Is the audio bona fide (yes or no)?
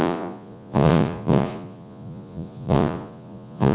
no